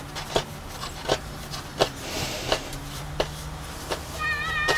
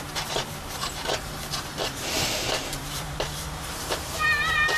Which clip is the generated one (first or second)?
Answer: second